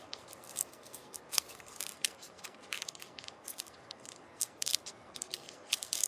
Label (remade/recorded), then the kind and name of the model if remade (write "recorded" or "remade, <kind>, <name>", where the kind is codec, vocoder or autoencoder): remade, codec, SNAC